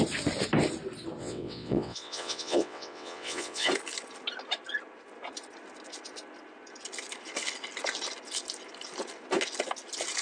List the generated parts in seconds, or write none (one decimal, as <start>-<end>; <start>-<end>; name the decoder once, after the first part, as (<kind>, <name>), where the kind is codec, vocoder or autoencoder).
1.2-3.7 (vocoder, WaveNeXt)